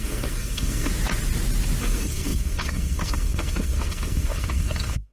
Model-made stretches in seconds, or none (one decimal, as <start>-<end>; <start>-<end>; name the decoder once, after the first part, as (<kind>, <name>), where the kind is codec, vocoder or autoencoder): 0.0-0.9 (codec, SNAC); 1.8-5.1